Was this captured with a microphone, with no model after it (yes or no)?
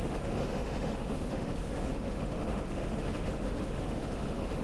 no